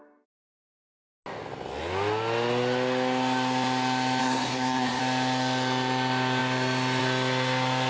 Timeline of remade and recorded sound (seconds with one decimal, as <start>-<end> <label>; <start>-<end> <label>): 0.0-4.2 recorded; 4.2-5.0 remade; 5.0-7.9 recorded